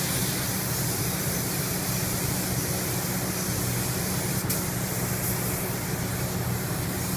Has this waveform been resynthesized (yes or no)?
no